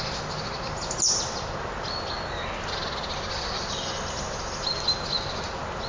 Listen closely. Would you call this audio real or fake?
real